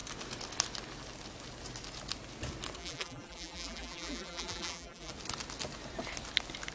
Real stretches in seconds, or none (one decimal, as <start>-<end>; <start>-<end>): 0.0-2.8; 5.1-6.7